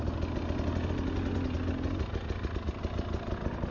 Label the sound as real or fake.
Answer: real